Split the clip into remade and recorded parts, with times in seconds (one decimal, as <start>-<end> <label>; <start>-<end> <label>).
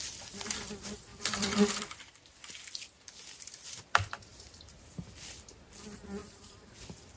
0.0-1.1 recorded; 1.1-2.1 remade; 2.1-4.3 recorded; 4.3-5.6 remade; 5.6-6.2 recorded; 6.2-6.7 remade; 6.7-7.2 recorded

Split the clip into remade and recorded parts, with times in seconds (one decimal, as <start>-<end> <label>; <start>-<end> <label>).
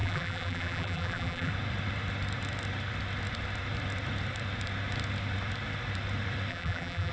0.0-1.5 remade; 1.5-6.5 recorded; 6.5-7.1 remade